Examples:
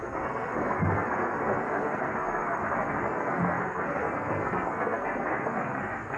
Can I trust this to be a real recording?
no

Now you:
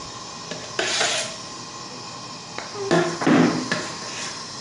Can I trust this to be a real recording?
yes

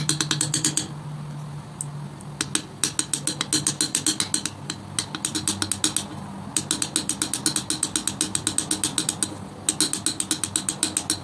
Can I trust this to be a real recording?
yes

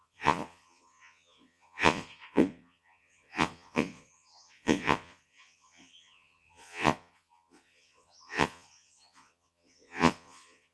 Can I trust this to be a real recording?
no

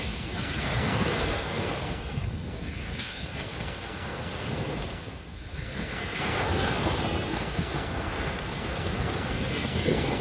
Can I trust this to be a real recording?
no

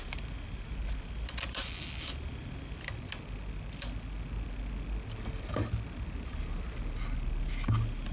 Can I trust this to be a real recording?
yes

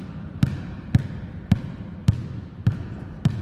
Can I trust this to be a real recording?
no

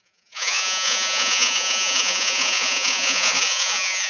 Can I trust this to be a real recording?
no